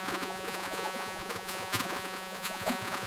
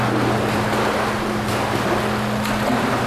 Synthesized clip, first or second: first